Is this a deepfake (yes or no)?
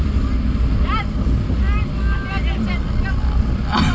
no